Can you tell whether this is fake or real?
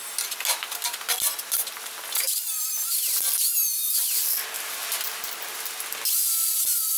real